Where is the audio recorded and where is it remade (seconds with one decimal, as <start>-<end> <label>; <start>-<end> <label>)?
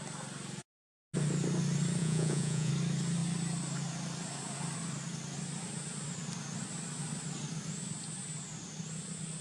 0.0-2.0 recorded; 2.0-2.7 remade; 2.7-9.4 recorded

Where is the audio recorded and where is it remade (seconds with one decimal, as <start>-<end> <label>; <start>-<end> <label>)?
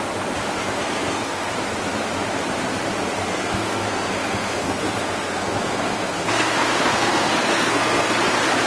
0.0-0.6 recorded; 0.6-1.5 remade; 1.5-3.3 recorded; 3.3-8.2 remade; 8.2-8.7 recorded